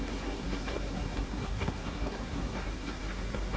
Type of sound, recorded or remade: remade